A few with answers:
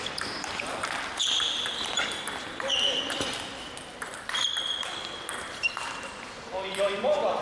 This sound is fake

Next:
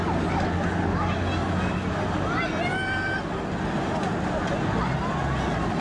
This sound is real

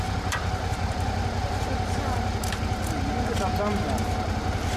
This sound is real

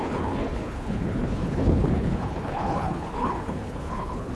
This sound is fake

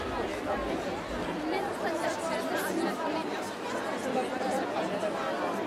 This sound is real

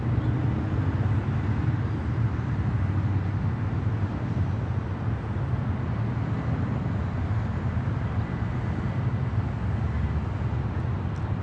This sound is real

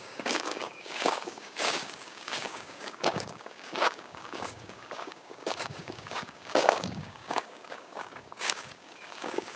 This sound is fake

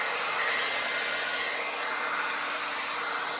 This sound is real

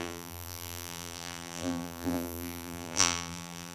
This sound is fake